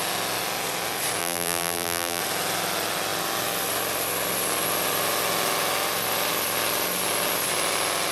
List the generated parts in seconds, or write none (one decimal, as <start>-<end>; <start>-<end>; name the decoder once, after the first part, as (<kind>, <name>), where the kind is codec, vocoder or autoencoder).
1.2-2.2 (vocoder, BigVGAN v2)